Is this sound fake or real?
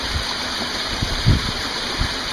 real